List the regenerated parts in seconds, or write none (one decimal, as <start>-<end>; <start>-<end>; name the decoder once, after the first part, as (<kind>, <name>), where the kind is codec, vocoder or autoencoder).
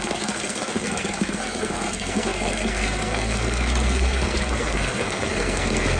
0.0-6.0 (codec, SNAC)